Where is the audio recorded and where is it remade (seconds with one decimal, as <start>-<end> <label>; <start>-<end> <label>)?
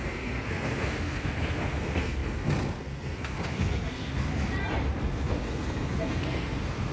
0.0-4.3 remade; 4.3-5.0 recorded; 5.0-6.9 remade